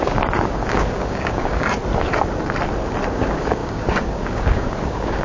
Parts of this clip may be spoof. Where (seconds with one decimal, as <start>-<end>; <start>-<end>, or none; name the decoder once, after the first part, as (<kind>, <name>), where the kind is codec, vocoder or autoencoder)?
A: 0.0-1.8 (codec, DAC); 3.1-5.2